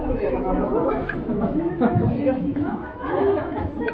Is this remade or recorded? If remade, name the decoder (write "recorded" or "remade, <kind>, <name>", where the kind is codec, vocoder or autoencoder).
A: remade, autoencoder, DAC-VAE